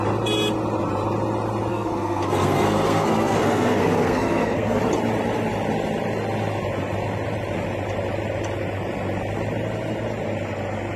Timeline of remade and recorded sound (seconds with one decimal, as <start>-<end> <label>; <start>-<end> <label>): 0.0-1.7 recorded; 1.7-4.8 remade; 4.8-11.0 recorded